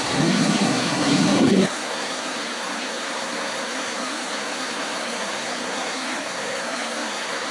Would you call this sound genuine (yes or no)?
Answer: no